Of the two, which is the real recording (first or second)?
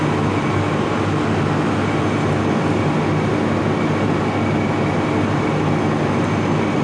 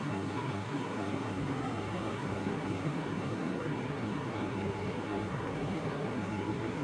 first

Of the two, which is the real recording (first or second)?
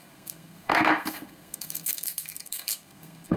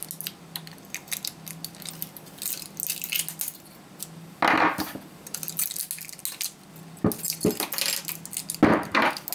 second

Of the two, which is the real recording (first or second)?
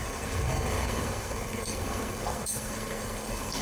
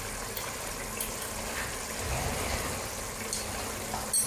second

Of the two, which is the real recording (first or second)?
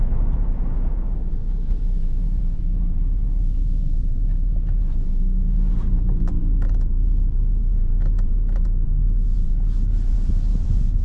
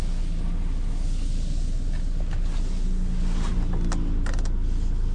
second